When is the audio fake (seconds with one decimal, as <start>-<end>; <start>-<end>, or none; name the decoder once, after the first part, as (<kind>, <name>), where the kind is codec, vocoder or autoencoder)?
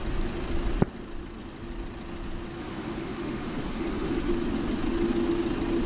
2.6-4.3 (autoencoder, DAC-VAE)